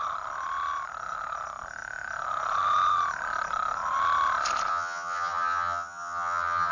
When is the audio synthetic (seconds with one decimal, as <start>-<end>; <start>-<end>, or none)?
4.7-6.7